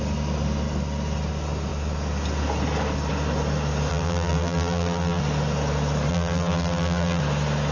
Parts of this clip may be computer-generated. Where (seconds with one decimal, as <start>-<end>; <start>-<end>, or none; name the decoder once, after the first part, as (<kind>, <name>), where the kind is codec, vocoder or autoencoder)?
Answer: 3.9-5.2 (vocoder, BigVGAN v2); 6.1-7.2